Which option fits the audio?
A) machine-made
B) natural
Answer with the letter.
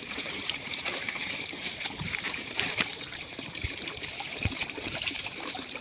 A